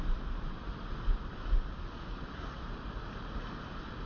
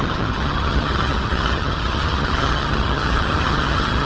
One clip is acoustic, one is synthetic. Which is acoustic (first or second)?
first